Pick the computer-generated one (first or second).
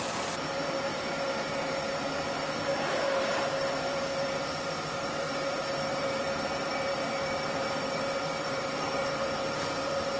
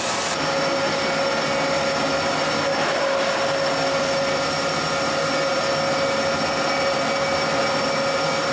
first